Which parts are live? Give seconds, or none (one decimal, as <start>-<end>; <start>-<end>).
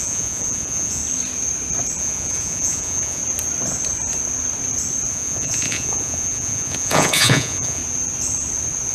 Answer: 1.0-2.0; 3.2-5.1; 7.8-8.9